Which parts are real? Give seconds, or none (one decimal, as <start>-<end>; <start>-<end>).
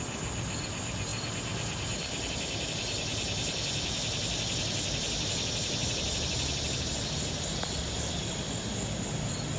0.0-9.6